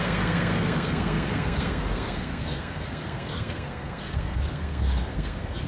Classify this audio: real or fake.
fake